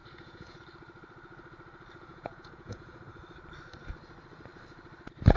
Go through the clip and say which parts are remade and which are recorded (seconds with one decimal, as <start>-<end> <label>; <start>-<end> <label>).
0.0-0.6 remade; 0.6-2.1 recorded; 2.1-3.0 remade; 3.0-5.4 recorded